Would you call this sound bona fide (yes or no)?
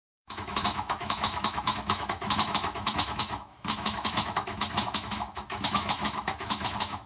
no